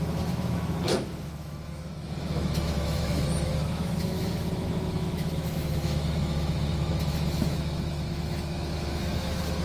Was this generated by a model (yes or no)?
yes